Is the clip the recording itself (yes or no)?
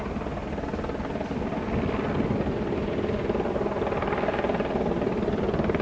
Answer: yes